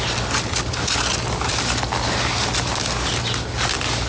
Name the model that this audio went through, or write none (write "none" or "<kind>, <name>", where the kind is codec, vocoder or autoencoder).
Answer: none